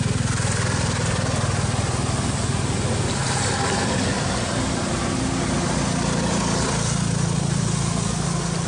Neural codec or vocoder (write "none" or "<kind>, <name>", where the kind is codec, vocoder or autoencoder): none